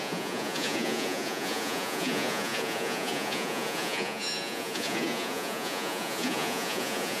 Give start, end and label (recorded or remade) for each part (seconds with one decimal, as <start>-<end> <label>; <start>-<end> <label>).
0.0-7.2 remade